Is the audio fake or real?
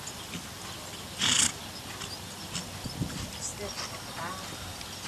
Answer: real